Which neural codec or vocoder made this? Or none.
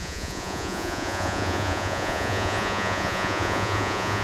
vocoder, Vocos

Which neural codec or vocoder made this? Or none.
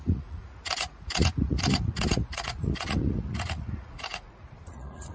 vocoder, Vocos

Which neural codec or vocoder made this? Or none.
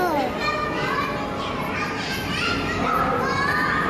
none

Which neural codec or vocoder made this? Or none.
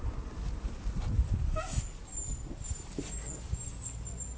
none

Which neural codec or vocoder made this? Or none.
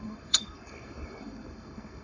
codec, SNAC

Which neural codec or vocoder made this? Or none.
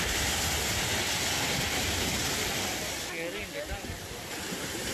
none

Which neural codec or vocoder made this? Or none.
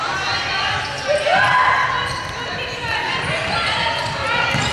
none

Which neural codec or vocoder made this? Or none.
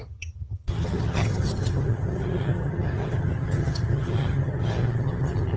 vocoder, HiFi-GAN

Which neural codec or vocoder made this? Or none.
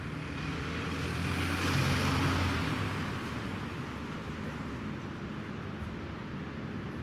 none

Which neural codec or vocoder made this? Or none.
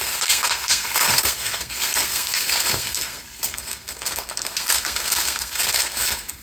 codec, SNAC